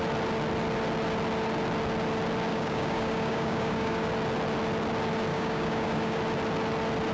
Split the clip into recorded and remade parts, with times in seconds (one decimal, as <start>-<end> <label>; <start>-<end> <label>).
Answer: 0.0-2.5 recorded; 2.5-4.1 remade; 4.1-5.3 recorded; 5.3-6.2 remade; 6.2-7.1 recorded